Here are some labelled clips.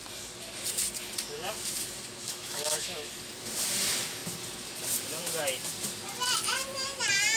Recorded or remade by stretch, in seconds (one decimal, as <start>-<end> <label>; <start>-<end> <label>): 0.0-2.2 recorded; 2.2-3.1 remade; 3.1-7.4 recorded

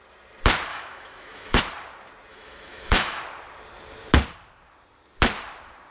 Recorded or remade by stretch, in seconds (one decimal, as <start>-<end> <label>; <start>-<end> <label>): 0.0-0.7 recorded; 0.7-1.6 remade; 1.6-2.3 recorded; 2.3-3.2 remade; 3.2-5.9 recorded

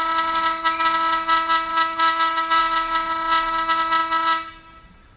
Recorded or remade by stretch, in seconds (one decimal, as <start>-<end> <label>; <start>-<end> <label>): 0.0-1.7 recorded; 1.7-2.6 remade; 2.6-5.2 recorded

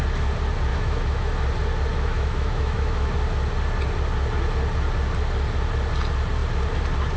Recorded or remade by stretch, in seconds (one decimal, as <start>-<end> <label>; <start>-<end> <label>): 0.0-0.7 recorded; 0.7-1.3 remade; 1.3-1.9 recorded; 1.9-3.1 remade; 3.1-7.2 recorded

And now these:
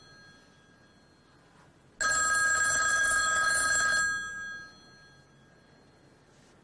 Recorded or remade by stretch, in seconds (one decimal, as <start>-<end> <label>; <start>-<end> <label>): 0.0-2.9 recorded; 2.9-3.5 remade; 3.5-6.6 recorded

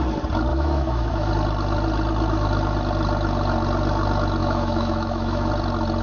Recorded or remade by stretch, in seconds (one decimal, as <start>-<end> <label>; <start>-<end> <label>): 0.0-0.5 recorded; 0.5-1.3 remade; 1.3-4.4 recorded; 4.4-5.5 remade; 5.5-6.0 recorded

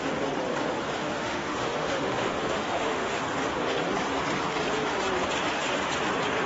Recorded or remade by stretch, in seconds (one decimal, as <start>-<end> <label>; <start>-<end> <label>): 0.0-1.0 recorded; 1.0-3.2 remade; 3.2-6.5 recorded

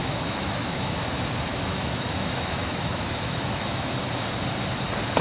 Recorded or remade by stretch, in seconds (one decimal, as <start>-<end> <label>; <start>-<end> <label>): 0.0-1.0 remade; 1.0-1.5 recorded; 1.5-3.8 remade; 3.8-5.2 recorded